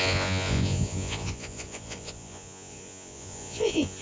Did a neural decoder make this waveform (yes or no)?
yes